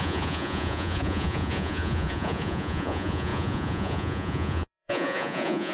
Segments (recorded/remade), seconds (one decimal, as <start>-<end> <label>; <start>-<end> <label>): 0.0-5.7 remade